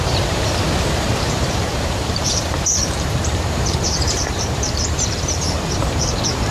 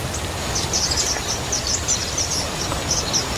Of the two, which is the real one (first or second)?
second